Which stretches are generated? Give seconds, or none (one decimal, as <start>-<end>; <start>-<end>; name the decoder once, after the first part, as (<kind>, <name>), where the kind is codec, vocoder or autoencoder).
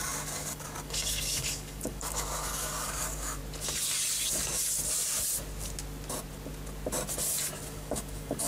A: 0.0-3.4 (codec, DAC); 7.7-8.5